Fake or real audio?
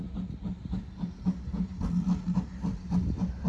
real